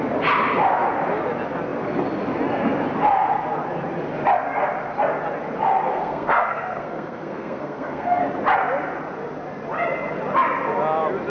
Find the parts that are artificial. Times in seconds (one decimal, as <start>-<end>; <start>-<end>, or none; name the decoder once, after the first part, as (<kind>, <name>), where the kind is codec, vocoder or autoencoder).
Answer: 5.9-8.2 (codec, SNAC)